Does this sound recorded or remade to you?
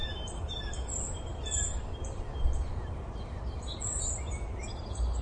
recorded